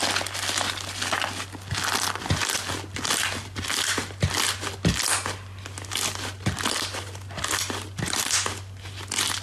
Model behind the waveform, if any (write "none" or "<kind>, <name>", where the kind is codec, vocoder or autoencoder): none